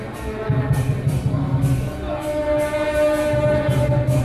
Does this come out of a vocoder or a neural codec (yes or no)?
no